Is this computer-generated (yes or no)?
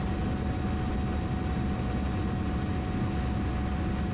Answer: no